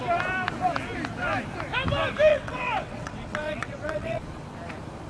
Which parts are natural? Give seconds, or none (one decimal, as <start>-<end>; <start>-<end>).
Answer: 0.0-2.3; 4.2-5.1